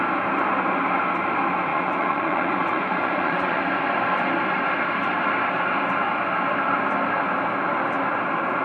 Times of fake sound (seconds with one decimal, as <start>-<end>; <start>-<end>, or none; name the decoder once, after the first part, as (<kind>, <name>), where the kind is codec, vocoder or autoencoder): 1.7-3.6 (vocoder, Vocos)